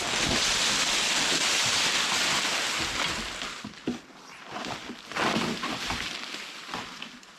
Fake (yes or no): no